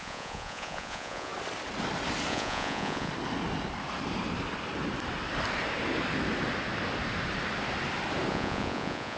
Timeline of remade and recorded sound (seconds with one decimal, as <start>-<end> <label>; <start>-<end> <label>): 0.0-1.3 remade; 1.3-2.3 recorded; 2.3-3.1 remade; 3.1-8.3 recorded; 8.3-9.2 remade